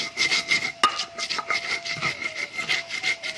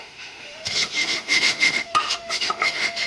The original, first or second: first